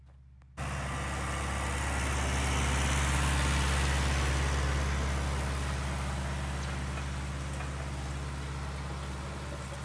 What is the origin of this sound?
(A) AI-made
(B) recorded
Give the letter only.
B